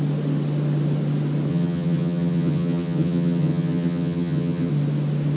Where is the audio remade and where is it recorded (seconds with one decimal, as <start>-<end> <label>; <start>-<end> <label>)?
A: 0.0-1.5 recorded; 1.5-4.7 remade; 4.7-5.4 recorded